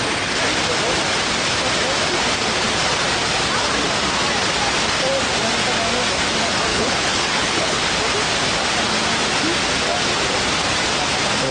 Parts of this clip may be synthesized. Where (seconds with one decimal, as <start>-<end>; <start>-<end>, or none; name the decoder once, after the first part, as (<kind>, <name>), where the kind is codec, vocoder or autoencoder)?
6.7-7.9 (codec, HILCodec)